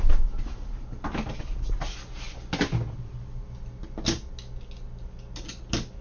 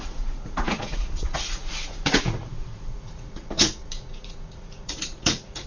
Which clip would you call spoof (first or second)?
second